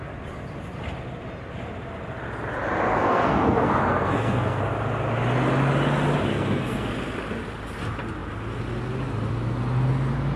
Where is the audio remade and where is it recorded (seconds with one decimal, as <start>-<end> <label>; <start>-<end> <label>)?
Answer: 0.0-2.9 recorded; 2.9-4.6 remade; 4.6-6.3 recorded; 6.3-6.9 remade; 6.9-10.4 recorded